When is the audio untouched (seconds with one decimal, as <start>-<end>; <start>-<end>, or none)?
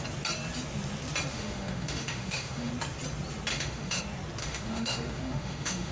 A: 0.0-1.3; 2.7-3.5; 4.0-4.4